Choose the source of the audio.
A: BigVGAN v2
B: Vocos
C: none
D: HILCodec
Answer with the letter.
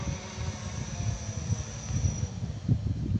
C